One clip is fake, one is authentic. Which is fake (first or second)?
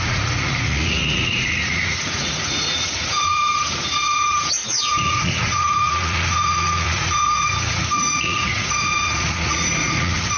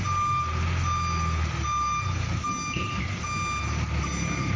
first